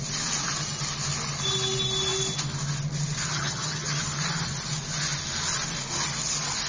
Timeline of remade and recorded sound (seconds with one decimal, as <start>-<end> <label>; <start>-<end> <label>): 0.0-3.3 recorded; 3.3-4.0 remade; 4.0-6.7 recorded